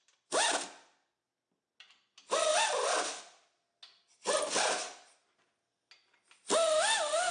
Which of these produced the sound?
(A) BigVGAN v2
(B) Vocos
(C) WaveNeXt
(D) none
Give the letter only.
D